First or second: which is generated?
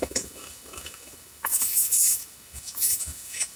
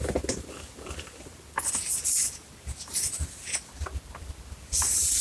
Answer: first